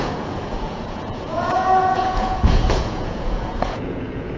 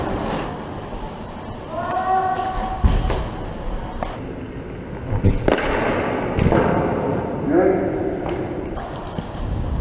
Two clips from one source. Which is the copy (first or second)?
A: first